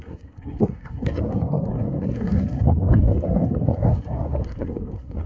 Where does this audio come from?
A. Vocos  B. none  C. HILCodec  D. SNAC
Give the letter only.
D